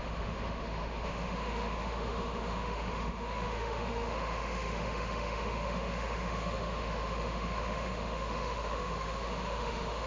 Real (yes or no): no